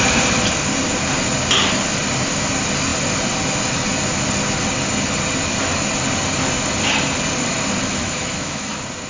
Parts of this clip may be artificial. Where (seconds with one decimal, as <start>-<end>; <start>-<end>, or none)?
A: 7.9-8.7